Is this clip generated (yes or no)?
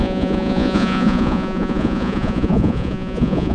yes